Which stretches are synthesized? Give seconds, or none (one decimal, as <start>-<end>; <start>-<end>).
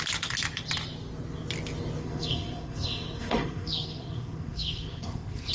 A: 2.0-5.5